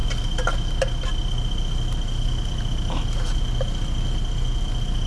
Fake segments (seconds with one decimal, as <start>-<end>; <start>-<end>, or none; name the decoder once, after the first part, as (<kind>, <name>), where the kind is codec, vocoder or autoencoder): none